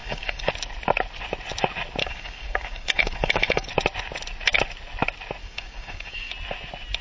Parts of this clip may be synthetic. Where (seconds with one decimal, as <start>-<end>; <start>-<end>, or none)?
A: 0.0-0.5; 2.0-3.7; 5.4-6.3